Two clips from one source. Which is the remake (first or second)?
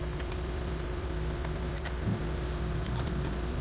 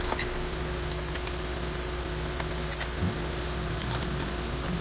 first